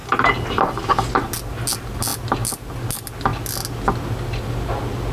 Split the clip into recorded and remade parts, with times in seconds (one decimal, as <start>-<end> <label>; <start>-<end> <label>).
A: 0.0-5.1 recorded